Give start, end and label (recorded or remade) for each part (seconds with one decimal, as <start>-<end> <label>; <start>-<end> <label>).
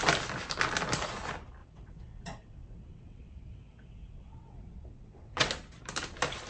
0.0-1.6 recorded; 1.6-5.5 remade; 5.5-6.5 recorded